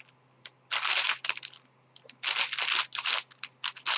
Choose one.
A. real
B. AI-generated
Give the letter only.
A